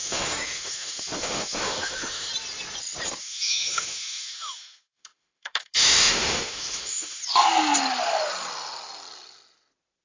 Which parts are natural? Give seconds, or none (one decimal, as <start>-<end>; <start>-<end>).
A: 2.3-3.2; 7.2-10.0